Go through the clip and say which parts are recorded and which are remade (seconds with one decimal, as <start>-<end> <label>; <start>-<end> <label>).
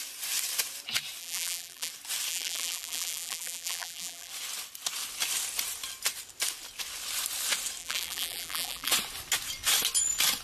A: 0.0-1.2 recorded; 1.2-1.9 remade; 1.9-2.3 recorded; 2.3-4.3 remade; 4.3-7.8 recorded; 7.8-8.9 remade; 8.9-10.4 recorded